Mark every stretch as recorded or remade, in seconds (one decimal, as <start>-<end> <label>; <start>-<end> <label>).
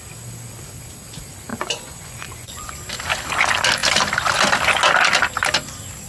0.0-1.5 recorded; 1.5-2.8 remade; 2.8-6.1 recorded